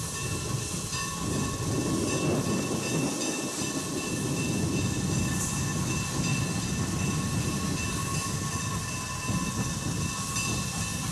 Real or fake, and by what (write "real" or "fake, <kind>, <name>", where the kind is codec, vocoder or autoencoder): real